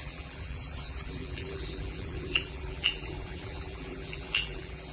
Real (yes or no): no